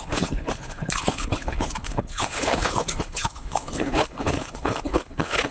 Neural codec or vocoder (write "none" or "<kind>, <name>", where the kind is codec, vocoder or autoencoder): codec, HILCodec